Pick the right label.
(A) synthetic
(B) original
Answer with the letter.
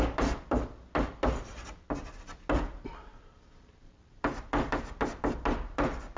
B